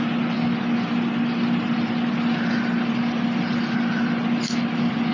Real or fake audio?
real